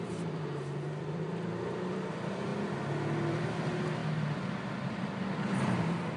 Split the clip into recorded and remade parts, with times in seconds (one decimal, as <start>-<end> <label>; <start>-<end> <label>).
0.0-2.5 remade; 2.5-3.3 recorded; 3.3-4.0 remade; 4.0-5.6 recorded; 5.6-6.2 remade